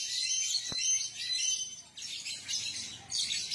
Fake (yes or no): no